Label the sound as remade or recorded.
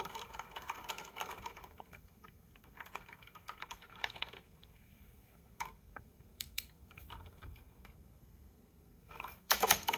remade